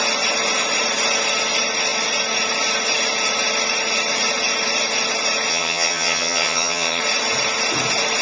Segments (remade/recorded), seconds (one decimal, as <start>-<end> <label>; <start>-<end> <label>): 0.0-5.5 recorded; 5.5-7.0 remade; 7.0-8.2 recorded